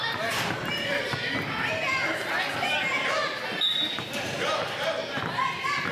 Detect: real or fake real